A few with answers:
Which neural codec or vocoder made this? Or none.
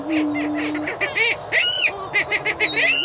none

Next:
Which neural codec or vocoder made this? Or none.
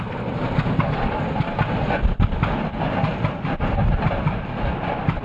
none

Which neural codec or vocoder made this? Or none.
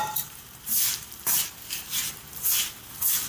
vocoder, BigVGAN v2